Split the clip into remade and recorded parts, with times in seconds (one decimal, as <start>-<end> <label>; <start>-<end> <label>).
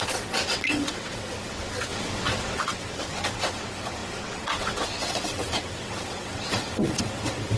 0.0-7.6 remade